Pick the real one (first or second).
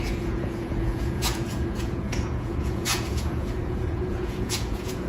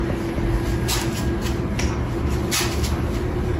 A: second